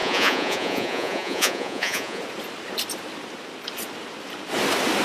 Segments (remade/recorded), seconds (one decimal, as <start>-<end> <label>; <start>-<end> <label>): 0.0-2.2 remade; 2.2-5.0 recorded